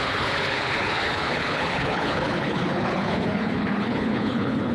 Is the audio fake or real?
fake